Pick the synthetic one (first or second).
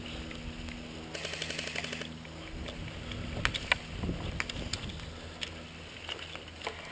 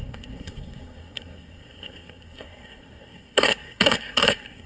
second